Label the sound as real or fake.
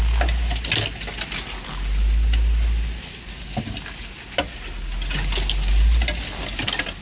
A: real